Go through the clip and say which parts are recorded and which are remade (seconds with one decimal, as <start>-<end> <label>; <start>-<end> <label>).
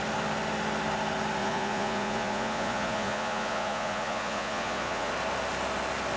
0.0-1.4 recorded; 1.4-5.1 remade; 5.1-6.2 recorded